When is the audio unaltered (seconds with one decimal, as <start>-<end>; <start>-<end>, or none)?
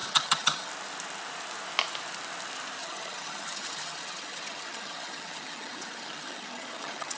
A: 0.7-2.8